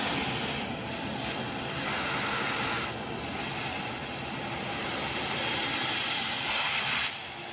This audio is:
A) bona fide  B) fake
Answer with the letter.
A